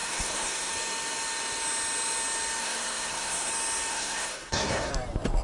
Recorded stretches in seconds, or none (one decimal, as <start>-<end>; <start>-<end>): 0.7-2.6; 3.5-3.9; 4.9-5.4